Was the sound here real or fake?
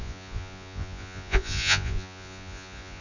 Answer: fake